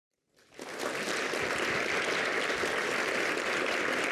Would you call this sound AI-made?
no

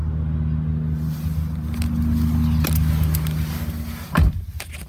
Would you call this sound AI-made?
no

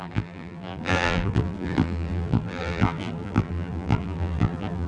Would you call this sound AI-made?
yes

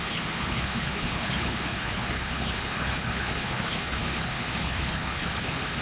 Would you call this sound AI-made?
yes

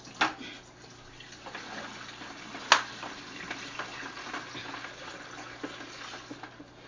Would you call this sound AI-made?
no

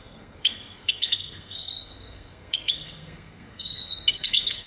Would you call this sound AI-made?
yes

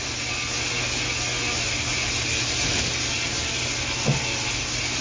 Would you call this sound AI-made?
no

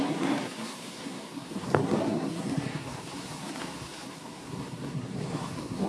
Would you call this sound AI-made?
yes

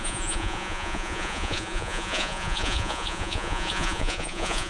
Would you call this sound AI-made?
yes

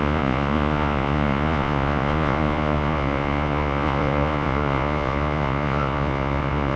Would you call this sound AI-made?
yes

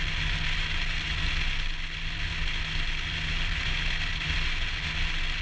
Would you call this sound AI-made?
no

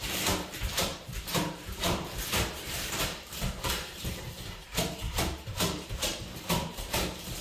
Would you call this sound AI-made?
yes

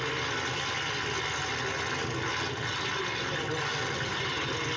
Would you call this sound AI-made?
no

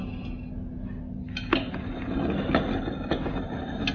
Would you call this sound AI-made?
no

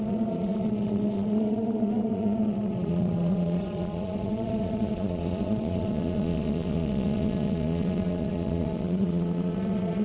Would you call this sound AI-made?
yes